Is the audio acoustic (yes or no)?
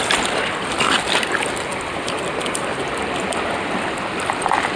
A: no